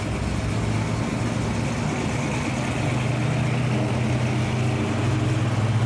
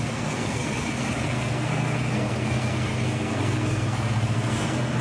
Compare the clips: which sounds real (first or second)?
first